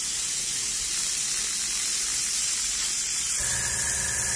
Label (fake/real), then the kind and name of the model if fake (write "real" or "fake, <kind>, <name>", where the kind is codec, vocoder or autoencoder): real